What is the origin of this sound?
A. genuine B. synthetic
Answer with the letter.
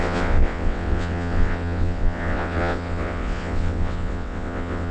B